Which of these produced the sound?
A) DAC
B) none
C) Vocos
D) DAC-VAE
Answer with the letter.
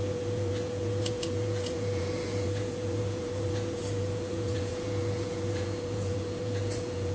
C